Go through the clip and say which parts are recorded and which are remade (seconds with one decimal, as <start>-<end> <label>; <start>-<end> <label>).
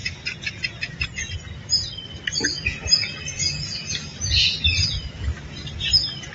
0.0-1.3 remade; 1.3-2.3 recorded; 2.3-5.2 remade; 5.2-6.3 recorded